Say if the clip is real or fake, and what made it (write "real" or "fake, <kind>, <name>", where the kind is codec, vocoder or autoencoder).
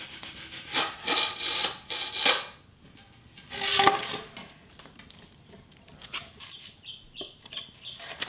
real